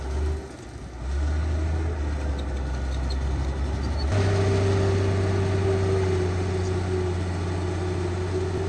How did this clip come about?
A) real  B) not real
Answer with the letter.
A